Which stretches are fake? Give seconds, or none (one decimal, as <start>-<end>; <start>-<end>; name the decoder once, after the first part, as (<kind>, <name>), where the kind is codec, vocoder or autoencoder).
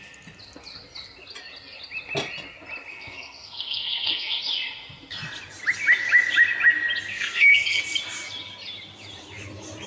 2.9-4.4 (codec, SNAC); 7.1-7.8